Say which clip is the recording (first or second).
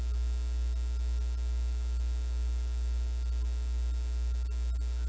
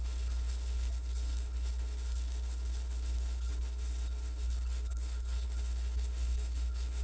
first